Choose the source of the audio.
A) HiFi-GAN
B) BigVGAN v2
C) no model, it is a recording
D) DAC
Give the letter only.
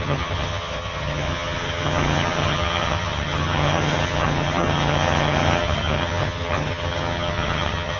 A